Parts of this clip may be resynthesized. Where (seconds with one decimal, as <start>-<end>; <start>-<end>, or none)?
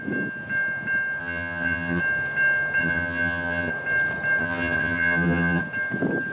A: 1.2-2.0; 2.8-3.7; 4.4-5.6